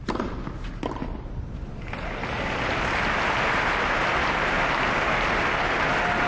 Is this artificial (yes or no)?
no